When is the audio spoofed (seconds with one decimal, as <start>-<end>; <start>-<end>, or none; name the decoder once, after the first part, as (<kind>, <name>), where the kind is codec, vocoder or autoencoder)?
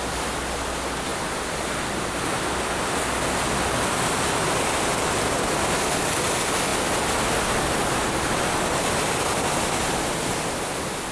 none